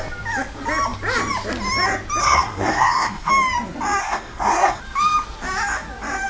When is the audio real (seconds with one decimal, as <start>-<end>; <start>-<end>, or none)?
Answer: 0.0-2.2; 3.3-4.0; 4.8-6.3